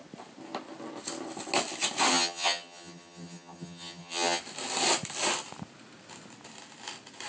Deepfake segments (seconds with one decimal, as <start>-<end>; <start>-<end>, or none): 2.1-4.4